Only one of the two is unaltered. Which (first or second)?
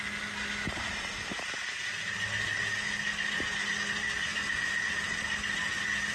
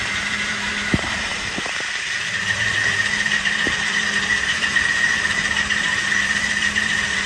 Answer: first